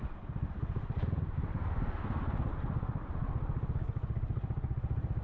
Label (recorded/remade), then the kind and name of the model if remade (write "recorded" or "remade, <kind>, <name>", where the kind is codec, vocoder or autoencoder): recorded